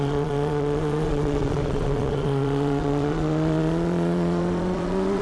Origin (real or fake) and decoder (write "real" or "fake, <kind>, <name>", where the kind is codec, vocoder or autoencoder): fake, vocoder, Vocos